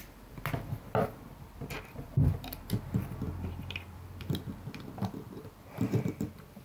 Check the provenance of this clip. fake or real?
fake